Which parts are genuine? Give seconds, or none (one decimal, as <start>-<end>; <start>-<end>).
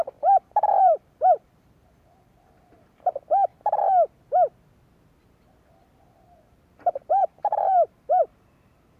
3.5-6.0